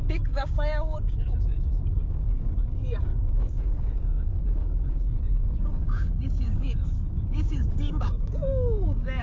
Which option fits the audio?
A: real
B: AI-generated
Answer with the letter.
B